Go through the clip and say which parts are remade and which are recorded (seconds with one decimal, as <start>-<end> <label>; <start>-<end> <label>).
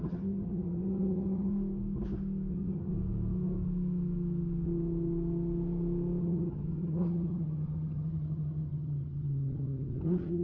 0.0-1.5 remade; 1.5-2.5 recorded; 2.5-2.9 remade; 2.9-6.2 recorded; 6.2-10.4 remade